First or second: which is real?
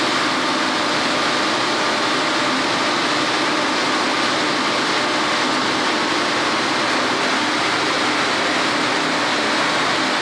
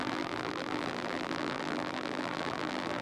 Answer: first